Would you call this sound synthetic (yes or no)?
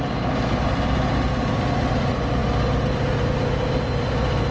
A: no